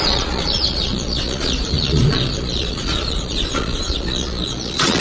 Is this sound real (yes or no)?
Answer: no